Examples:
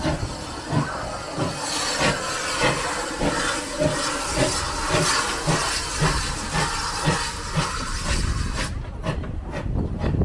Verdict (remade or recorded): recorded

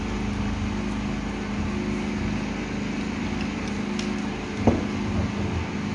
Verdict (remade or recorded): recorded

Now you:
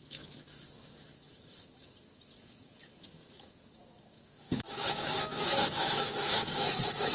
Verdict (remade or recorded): remade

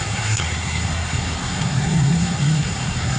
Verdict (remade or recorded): remade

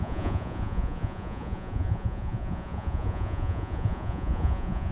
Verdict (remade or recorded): remade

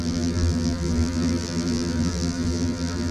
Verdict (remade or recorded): remade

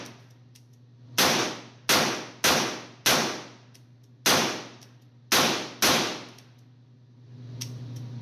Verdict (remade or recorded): recorded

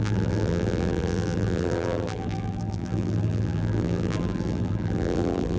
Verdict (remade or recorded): remade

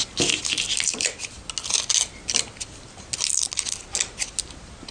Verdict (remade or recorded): recorded